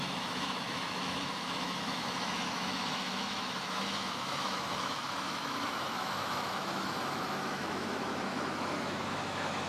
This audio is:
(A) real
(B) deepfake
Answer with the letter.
B